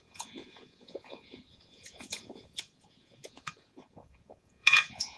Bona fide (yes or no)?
no